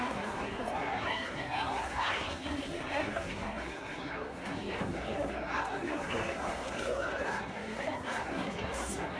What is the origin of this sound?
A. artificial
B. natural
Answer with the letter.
A